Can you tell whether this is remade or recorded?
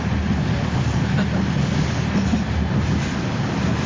recorded